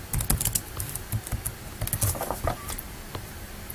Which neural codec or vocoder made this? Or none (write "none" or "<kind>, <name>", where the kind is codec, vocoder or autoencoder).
none